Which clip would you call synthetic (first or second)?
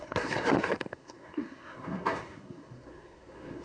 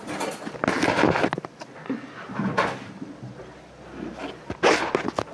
first